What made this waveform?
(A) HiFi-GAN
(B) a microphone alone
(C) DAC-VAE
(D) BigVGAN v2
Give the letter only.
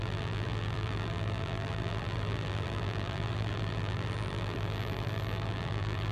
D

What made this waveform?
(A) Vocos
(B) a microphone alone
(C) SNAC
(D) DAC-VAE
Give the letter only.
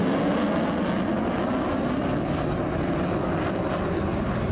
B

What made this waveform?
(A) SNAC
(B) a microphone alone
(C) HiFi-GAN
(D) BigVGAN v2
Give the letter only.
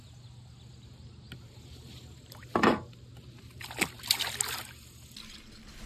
B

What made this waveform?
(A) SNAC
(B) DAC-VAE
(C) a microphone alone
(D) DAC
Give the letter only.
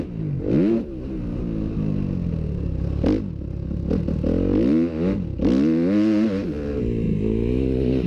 C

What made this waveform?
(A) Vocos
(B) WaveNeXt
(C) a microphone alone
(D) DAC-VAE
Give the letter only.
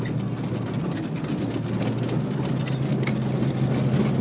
C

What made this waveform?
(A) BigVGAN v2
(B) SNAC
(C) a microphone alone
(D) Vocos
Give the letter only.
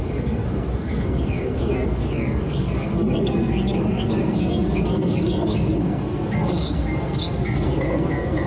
B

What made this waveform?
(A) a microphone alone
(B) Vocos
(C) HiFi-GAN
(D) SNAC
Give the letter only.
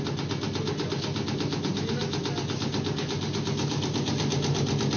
A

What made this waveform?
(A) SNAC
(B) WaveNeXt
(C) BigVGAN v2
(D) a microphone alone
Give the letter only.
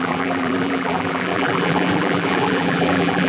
C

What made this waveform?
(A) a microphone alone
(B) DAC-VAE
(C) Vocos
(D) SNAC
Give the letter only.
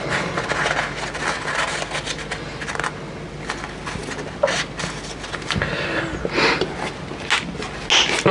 A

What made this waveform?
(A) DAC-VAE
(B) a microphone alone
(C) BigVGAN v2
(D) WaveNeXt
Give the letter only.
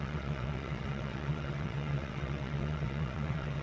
D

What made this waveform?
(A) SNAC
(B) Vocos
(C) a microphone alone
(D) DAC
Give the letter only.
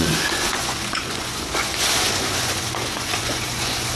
B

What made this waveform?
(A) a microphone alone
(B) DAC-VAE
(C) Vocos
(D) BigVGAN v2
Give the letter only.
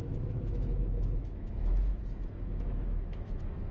B